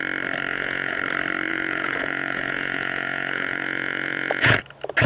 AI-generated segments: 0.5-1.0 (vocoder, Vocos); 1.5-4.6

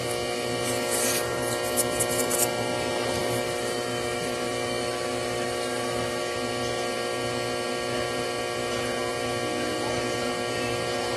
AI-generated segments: 3.2-6.2 (autoencoder, DAC-VAE)

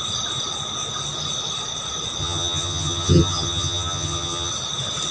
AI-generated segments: 2.2-4.5 (vocoder, HiFi-GAN)